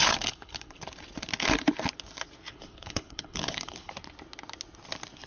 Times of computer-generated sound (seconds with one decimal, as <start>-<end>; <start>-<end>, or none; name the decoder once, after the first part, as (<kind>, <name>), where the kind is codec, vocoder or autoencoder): 0.0-0.8 (codec, HILCodec); 2.5-3.9